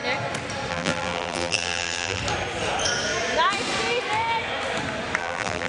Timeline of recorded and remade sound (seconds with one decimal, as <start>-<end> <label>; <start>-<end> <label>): 0.0-0.7 recorded; 0.7-2.2 remade; 2.2-5.2 recorded; 5.2-5.7 remade